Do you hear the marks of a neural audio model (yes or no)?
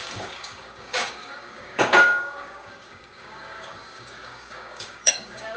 yes